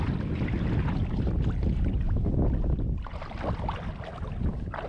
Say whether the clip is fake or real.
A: real